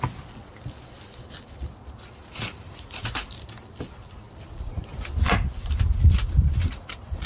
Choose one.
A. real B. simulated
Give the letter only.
A